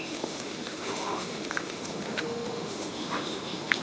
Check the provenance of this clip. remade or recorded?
remade